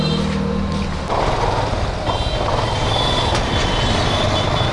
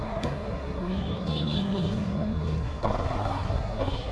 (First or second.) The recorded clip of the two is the first